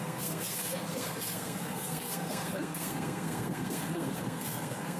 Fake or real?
fake